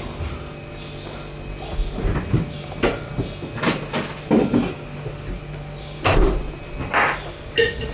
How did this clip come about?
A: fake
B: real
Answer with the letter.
B